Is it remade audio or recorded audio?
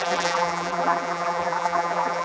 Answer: remade